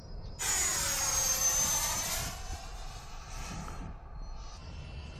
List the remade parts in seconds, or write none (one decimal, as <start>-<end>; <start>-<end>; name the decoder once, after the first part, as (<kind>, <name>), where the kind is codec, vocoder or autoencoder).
4.6-5.2 (vocoder, BigVGAN v2)